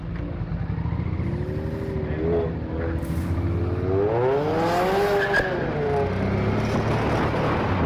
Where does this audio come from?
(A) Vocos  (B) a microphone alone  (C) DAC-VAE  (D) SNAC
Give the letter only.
B